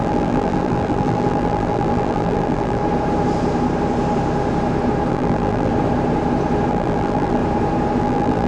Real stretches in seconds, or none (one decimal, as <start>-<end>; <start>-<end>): 2.8-5.1; 5.7-6.7; 7.4-8.0